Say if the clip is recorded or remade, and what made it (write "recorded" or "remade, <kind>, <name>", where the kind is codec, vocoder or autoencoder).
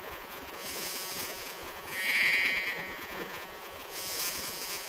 remade, vocoder, Vocos